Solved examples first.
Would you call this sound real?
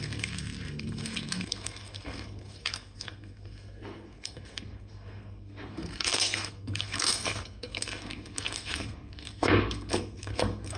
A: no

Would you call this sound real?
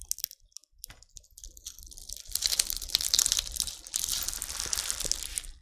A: yes